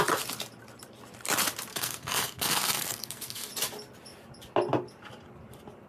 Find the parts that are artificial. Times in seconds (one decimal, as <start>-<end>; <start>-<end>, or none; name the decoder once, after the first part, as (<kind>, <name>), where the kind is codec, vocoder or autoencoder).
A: 1.7-3.5 (codec, SNAC)